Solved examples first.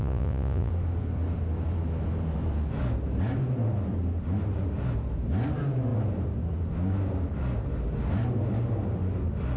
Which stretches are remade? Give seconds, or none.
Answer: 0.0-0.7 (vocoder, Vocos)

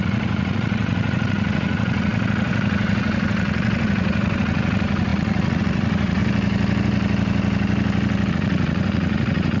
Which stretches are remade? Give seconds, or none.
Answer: 0.0-6.2 (vocoder, Vocos); 8.3-9.6

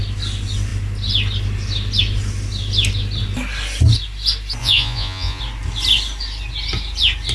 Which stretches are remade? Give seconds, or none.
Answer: 4.6-5.4 (vocoder, Vocos)

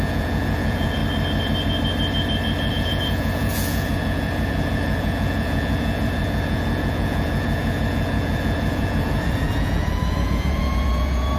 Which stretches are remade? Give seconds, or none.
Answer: 0.0-1.0 (vocoder, Vocos); 2.7-11.4

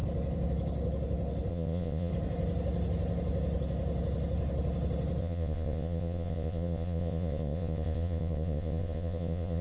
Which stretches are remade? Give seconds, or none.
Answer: 1.5-2.1 (vocoder, Vocos); 5.2-9.6

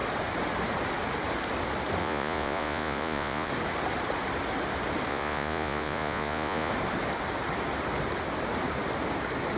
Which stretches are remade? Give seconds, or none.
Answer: 2.0-3.5 (vocoder, Vocos); 5.1-6.7

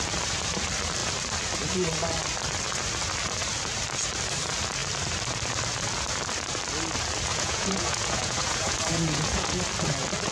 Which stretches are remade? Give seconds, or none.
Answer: 7.3-9.6 (vocoder, Vocos)